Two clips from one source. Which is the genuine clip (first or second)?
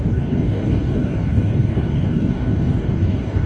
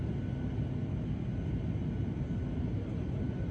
second